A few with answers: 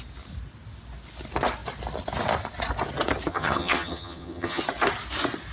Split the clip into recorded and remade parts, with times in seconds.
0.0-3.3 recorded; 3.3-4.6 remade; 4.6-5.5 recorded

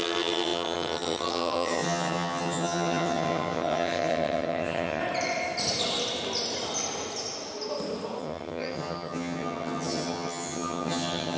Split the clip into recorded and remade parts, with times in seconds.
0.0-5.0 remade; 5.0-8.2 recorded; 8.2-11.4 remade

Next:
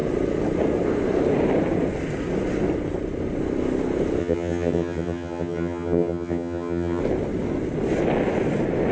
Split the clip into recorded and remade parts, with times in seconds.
0.0-4.2 recorded; 4.2-7.0 remade; 7.0-8.9 recorded

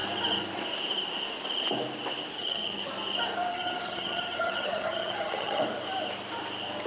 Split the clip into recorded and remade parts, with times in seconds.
0.0-2.3 recorded; 2.3-2.9 remade; 2.9-3.5 recorded; 3.5-5.6 remade; 5.6-6.9 recorded